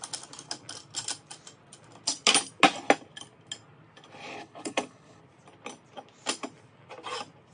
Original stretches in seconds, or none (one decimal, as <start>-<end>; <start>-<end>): 0.0-4.3; 5.2-7.5